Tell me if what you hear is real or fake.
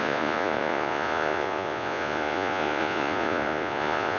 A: fake